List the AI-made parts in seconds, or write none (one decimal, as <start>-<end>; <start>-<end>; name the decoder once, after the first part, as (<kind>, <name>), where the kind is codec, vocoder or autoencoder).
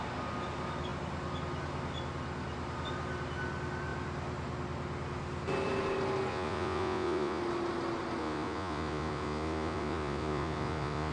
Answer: 6.3-7.4 (vocoder, Vocos); 8.2-11.1